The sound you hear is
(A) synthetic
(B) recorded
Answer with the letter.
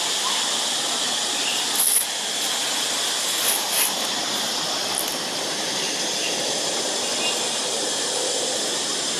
B